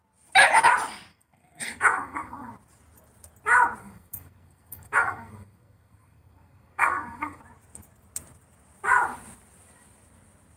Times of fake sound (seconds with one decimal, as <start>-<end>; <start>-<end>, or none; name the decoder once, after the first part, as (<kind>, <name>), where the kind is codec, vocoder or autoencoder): 1.1-2.5 (codec, SNAC); 3.8-7.4